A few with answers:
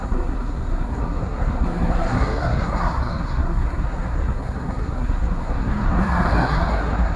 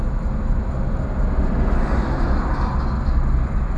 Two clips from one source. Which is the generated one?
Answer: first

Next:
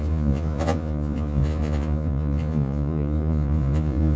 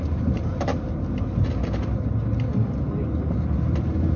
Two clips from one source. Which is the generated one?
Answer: first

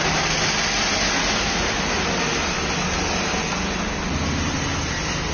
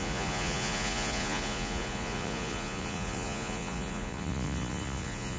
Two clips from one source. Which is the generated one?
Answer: second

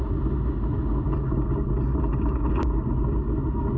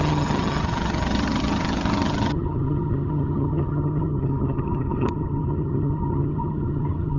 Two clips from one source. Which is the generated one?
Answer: second